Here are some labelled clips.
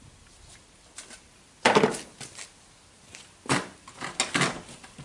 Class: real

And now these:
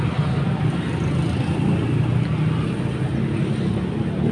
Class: real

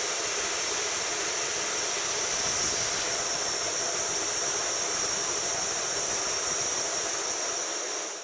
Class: real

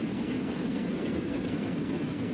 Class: fake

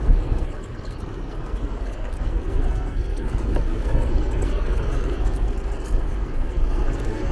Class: fake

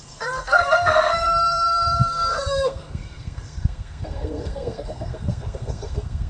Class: fake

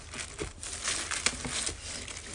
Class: real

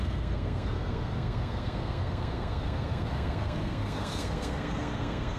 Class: fake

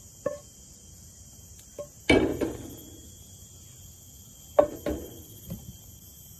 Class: real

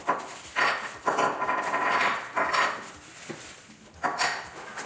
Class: real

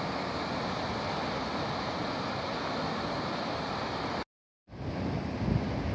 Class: real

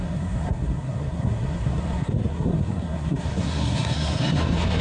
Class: fake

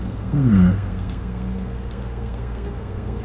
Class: fake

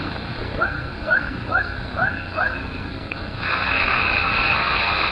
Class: fake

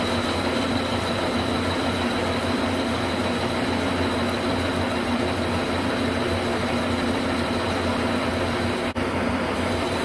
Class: real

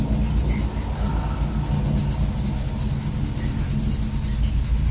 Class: real